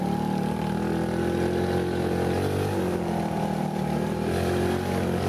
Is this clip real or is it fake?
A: real